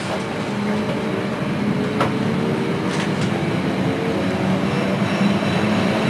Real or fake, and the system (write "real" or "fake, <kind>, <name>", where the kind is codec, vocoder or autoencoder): real